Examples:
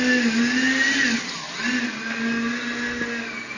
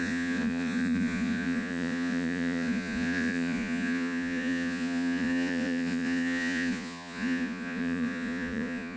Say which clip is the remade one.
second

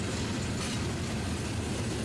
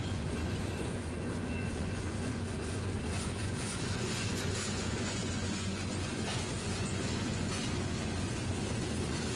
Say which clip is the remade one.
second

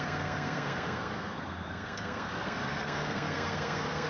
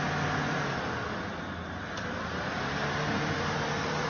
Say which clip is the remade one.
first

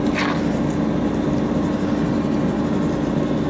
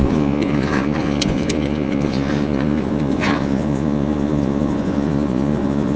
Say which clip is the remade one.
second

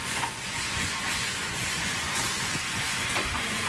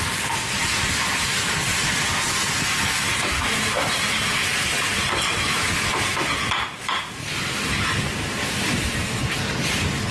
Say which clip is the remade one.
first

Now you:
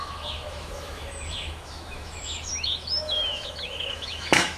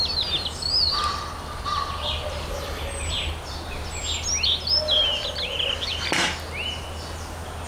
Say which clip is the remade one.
first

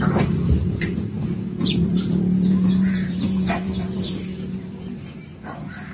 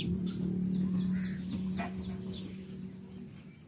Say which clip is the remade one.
first